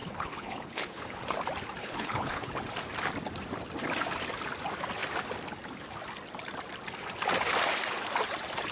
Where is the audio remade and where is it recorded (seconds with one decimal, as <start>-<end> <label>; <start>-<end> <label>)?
0.0-1.2 remade; 1.2-1.8 recorded; 1.8-2.5 remade; 2.5-8.7 recorded